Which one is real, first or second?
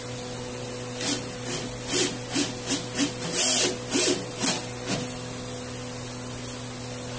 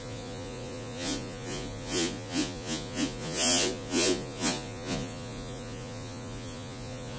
first